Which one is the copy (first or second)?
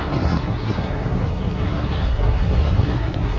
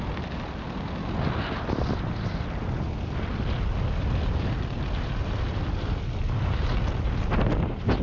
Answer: first